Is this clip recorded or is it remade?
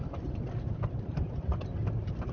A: recorded